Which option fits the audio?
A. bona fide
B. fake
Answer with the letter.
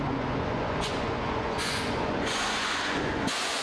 B